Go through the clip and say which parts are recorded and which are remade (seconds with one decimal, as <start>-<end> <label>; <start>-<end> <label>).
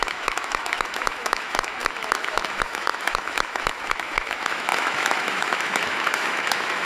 0.0-6.8 remade